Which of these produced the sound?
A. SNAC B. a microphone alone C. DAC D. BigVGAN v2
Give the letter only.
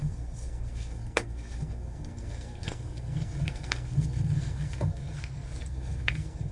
A